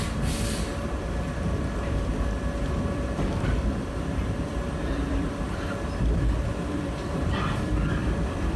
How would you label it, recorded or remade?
remade